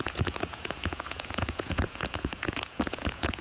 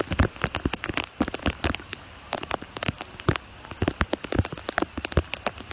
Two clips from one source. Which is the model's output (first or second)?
first